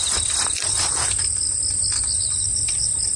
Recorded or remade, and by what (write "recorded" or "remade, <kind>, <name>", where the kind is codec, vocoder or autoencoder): recorded